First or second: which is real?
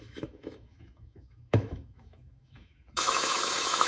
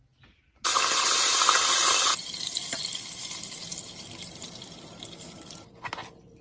second